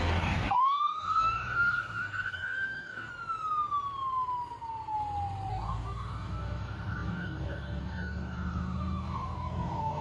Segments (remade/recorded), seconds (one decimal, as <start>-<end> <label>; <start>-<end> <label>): 0.0-3.1 remade; 3.1-5.5 recorded; 5.5-10.0 remade